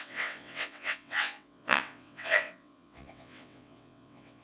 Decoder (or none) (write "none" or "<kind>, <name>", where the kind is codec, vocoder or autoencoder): vocoder, WaveNeXt